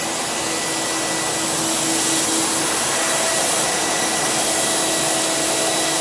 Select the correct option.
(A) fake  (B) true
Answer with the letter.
B